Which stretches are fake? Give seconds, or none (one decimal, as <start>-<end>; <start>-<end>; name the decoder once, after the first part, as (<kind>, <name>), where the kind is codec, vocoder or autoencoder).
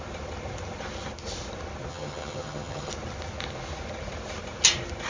1.9-2.9 (vocoder, HiFi-GAN)